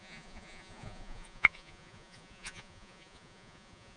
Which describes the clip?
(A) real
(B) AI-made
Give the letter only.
B